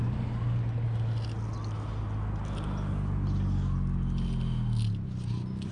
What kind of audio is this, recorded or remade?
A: recorded